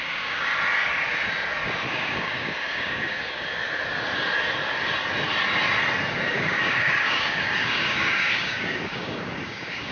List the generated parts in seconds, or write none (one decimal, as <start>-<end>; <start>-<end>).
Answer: 0.0-0.5; 1.9-3.6; 6.1-9.9